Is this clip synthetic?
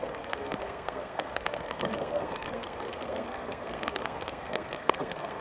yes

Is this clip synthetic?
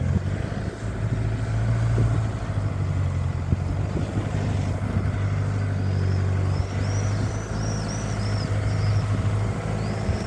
no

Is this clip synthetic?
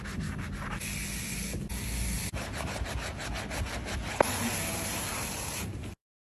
no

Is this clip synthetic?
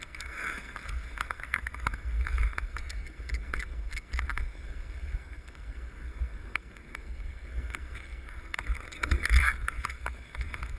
yes